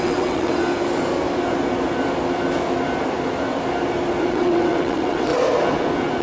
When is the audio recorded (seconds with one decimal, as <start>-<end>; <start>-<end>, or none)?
0.6-4.2; 5.3-6.2